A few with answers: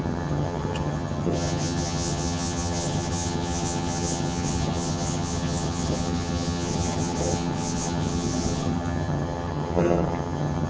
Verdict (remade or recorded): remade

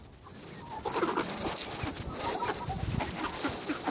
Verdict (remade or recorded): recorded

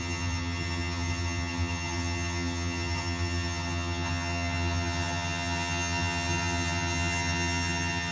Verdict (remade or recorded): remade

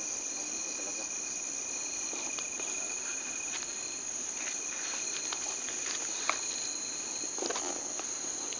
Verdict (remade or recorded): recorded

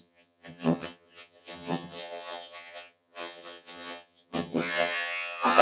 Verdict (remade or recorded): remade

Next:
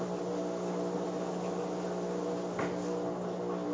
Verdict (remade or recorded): recorded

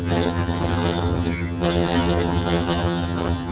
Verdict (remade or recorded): remade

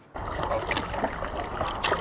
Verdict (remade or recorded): recorded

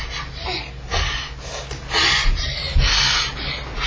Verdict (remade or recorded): recorded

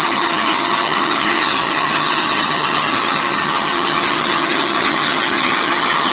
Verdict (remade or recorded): remade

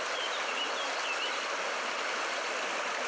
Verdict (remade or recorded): recorded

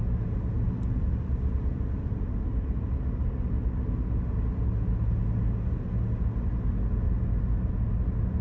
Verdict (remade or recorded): recorded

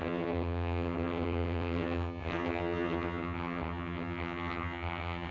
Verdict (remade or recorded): remade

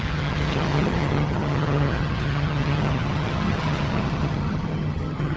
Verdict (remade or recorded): remade